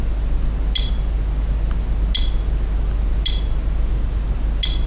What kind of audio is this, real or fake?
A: real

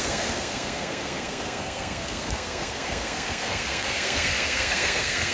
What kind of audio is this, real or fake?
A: fake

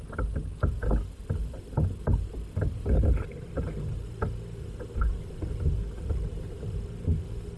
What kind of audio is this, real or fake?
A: real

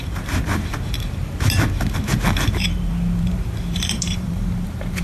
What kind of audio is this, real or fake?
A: fake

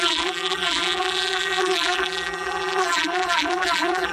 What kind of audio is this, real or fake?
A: fake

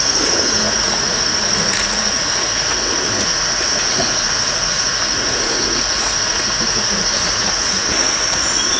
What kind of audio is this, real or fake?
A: fake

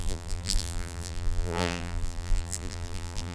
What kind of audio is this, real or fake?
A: fake